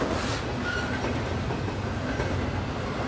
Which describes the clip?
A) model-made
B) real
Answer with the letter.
B